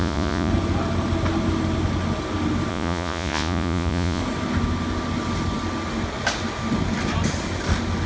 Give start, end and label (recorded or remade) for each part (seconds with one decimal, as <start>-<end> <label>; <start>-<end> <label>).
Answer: 0.0-0.5 remade; 0.5-2.7 recorded; 2.7-4.2 remade; 4.2-8.1 recorded